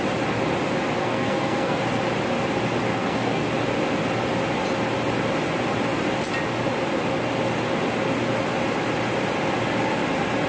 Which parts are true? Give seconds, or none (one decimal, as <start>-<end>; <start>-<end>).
0.0-1.0; 1.8-2.9; 3.5-10.5